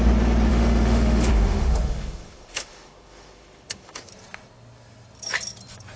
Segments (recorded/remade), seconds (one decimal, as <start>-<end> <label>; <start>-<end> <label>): 0.0-0.5 recorded; 0.5-4.1 remade; 4.1-6.0 recorded